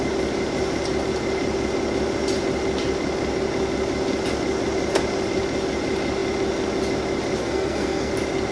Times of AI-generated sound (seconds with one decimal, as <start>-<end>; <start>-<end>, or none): 7.4-8.1